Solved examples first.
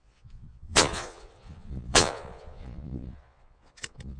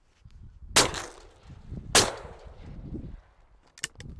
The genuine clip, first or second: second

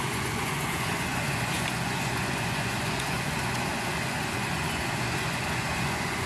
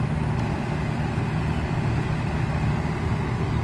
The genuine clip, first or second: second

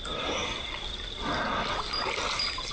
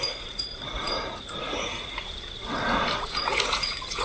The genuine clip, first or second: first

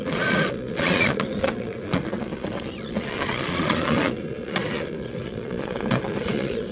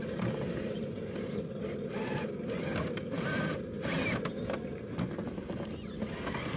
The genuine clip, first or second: second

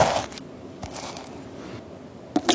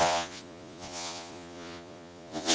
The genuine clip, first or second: first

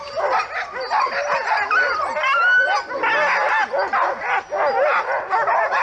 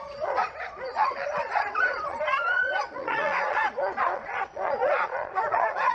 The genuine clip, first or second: first